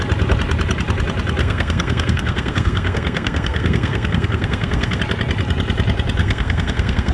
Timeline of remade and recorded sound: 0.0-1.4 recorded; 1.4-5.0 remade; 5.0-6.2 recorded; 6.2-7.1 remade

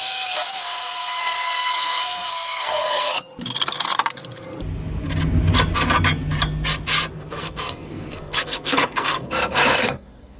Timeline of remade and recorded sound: 0.0-3.3 remade; 3.3-7.1 recorded; 7.1-10.4 remade